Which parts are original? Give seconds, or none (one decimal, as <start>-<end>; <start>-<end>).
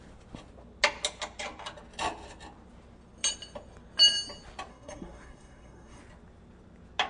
0.0-4.7; 6.0-7.1